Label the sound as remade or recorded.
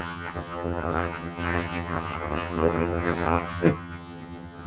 remade